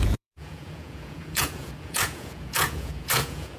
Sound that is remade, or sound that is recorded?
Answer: remade